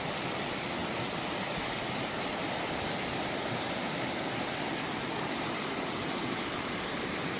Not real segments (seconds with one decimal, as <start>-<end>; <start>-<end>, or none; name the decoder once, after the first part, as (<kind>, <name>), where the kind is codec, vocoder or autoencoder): none